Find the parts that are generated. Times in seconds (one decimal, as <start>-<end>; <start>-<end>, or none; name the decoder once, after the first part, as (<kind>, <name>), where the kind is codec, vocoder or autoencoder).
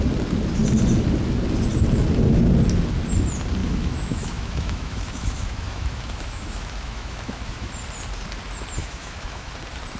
3.6-7.7 (autoencoder, DAC-VAE); 8.8-9.5